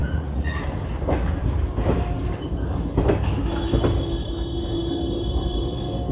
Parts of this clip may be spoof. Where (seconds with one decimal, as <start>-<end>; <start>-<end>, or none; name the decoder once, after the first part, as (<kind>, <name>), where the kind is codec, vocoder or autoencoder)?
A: 0.0-0.6 (vocoder, Vocos)